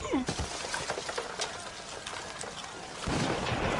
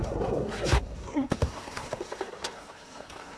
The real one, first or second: first